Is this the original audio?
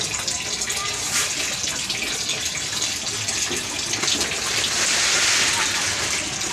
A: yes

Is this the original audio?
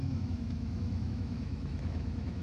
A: no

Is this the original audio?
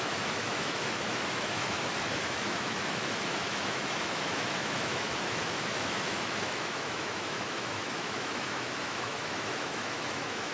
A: no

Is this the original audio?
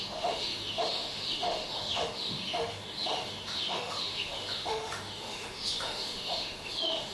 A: no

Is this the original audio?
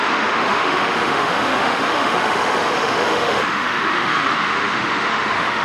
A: no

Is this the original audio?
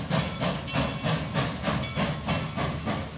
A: yes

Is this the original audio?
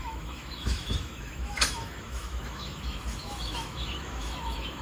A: no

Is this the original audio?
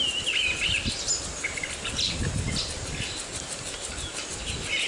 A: yes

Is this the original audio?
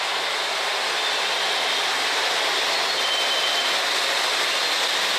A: yes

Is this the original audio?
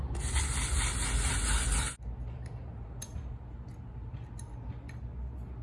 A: yes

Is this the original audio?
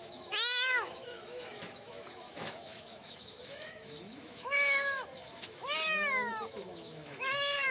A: no